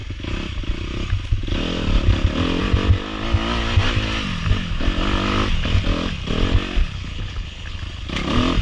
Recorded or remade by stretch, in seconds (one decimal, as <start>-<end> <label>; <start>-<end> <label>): 0.0-6.8 recorded; 6.8-7.8 remade; 7.8-8.6 recorded